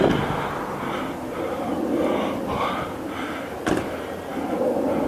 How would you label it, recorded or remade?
recorded